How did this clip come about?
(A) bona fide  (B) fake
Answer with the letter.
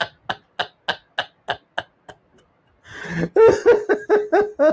A